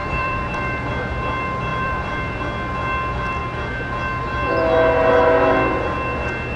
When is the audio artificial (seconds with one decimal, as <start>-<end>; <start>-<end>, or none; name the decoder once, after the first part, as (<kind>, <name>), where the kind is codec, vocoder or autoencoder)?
0.0-0.9 (vocoder, BigVGAN v2); 1.7-2.4